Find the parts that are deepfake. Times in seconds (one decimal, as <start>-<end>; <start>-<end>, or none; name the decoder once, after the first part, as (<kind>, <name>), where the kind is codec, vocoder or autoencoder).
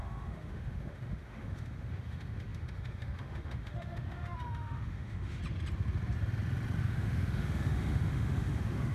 0.0-5.4 (autoencoder, DAC-VAE); 6.8-8.9